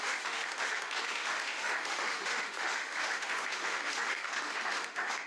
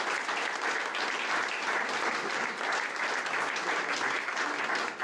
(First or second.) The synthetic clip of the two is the first